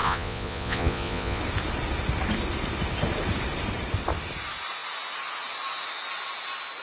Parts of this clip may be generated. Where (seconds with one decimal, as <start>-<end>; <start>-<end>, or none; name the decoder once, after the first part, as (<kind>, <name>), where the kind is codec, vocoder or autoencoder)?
0.0-1.4 (vocoder, Vocos)